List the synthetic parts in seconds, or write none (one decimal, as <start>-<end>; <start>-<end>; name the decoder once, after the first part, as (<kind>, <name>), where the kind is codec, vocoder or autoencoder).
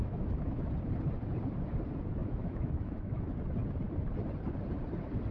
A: 0.0-0.7 (autoencoder, DAC-VAE); 2.2-3.3